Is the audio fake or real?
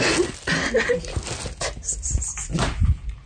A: real